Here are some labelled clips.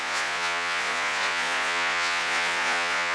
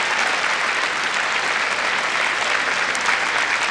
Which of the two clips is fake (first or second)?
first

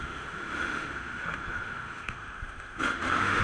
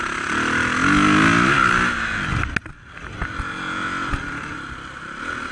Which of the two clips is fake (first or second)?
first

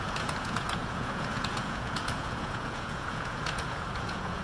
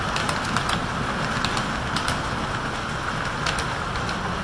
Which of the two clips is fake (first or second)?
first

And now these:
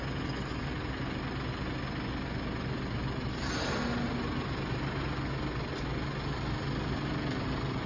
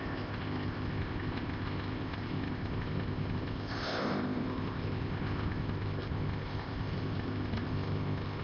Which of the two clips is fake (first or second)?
second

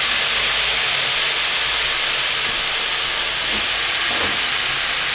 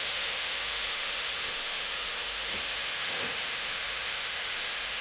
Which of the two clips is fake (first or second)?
second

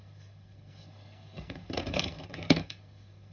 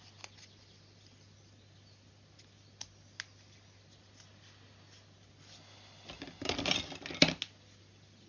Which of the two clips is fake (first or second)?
first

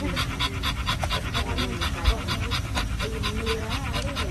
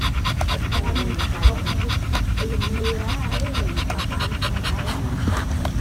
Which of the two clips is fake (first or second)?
second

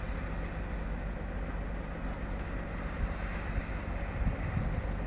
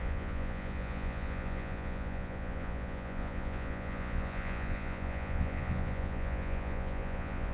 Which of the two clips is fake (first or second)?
second